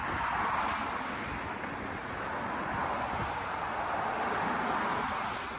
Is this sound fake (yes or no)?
no